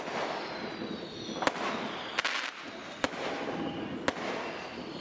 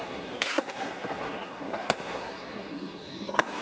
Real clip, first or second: first